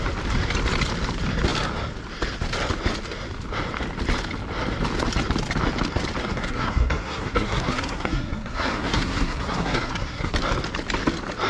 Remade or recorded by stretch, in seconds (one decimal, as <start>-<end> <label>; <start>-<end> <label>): 0.0-6.2 recorded; 6.2-10.3 remade; 10.3-11.5 recorded